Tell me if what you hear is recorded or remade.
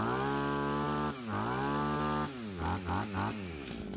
recorded